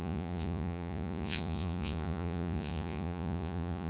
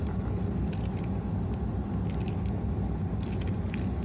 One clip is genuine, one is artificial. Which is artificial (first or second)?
first